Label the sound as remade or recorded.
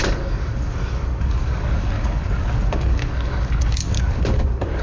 remade